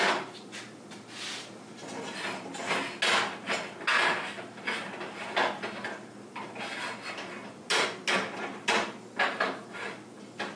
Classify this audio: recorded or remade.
recorded